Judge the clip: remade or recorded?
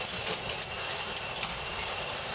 recorded